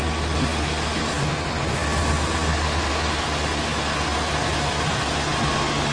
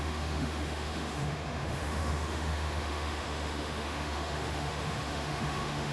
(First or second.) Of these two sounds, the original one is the first